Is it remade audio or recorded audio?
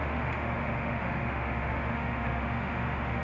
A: remade